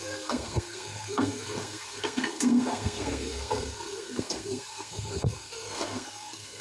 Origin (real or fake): fake